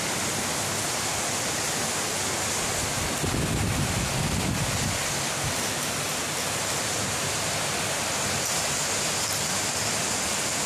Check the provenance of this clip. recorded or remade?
recorded